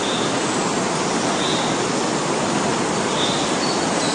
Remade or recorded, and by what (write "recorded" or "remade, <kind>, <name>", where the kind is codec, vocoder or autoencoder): recorded